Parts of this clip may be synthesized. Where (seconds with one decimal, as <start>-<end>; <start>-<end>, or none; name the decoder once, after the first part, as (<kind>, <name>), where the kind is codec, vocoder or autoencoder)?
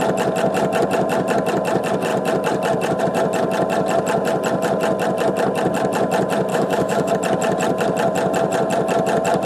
6.5-7.1 (autoencoder, DAC-VAE)